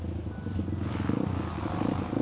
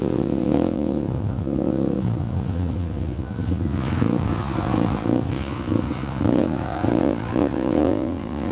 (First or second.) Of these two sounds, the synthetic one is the second